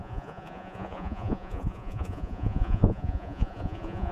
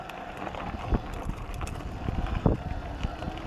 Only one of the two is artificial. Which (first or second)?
first